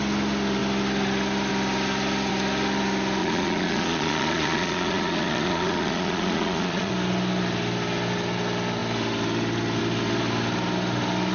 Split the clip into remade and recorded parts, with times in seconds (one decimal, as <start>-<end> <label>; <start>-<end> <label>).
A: 0.0-3.2 recorded; 3.2-6.9 remade; 6.9-11.3 recorded